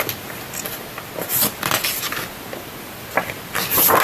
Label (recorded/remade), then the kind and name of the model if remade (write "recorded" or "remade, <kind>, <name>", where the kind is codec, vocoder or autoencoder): recorded